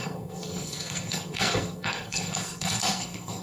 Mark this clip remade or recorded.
remade